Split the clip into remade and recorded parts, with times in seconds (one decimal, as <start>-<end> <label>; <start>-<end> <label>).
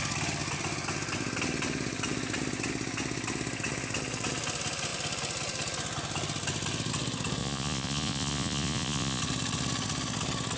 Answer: 0.0-7.4 recorded; 7.4-9.2 remade; 9.2-10.6 recorded